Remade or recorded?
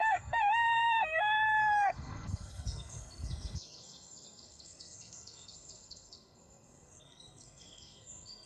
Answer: remade